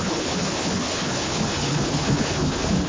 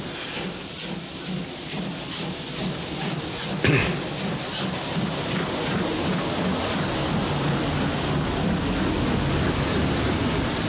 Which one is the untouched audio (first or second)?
second